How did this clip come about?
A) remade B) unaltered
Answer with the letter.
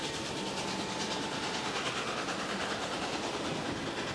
B